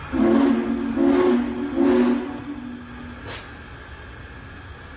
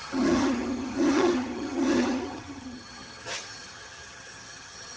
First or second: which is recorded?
first